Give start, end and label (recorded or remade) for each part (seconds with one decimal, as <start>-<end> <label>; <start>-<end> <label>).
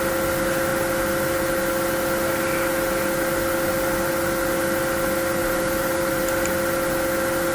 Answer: 0.0-5.4 recorded; 5.4-6.2 remade; 6.2-7.5 recorded